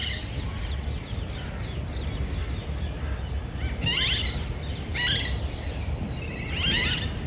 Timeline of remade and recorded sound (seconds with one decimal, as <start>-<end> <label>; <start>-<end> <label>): 0.0-7.3 recorded